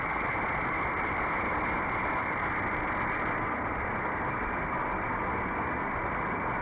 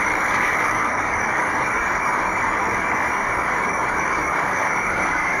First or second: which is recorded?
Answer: first